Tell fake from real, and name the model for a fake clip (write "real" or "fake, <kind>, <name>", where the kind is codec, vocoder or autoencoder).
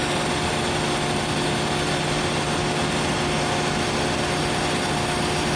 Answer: real